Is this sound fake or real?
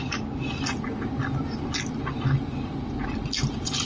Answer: real